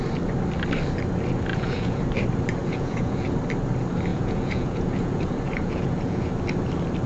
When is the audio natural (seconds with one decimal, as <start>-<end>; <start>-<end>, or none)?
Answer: 0.0-1.5; 2.0-2.6; 3.3-4.1; 6.3-7.1